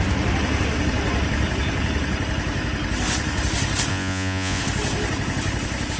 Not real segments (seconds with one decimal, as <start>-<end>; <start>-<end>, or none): 3.9-4.6